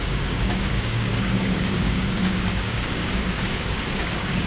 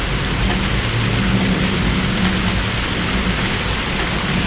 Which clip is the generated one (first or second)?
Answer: first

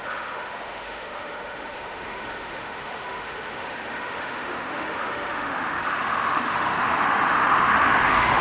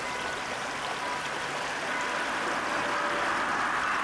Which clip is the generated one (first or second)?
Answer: first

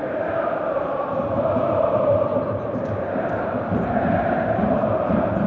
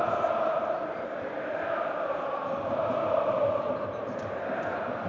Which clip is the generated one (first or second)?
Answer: first